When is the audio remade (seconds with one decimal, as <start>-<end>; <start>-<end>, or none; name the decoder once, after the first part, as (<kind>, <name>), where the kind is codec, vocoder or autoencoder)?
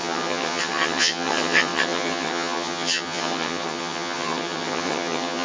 0.0-5.4 (vocoder, HiFi-GAN)